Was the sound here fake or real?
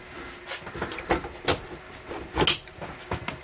real